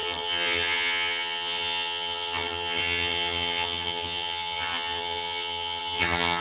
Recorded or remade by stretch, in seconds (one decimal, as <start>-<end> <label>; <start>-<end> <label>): 0.0-6.4 remade